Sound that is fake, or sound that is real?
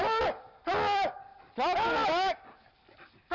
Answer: real